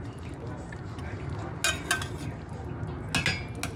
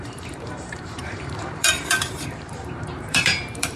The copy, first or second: second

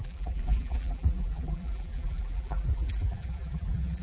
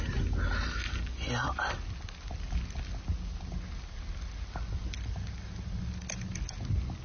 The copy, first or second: first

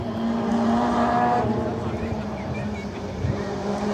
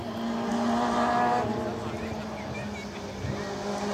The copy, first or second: first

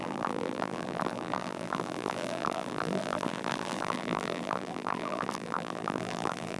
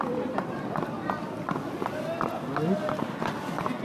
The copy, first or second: first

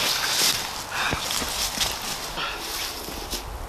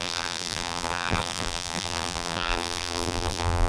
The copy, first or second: second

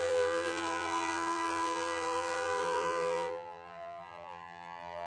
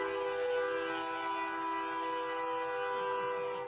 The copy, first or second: first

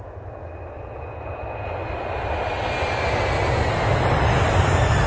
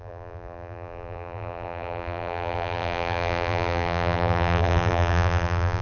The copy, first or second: second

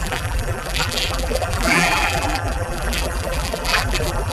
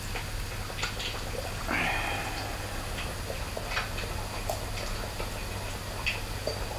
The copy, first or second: first